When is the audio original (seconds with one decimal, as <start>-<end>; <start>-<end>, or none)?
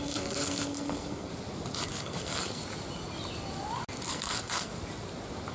1.3-1.9; 2.6-4.1; 4.7-5.5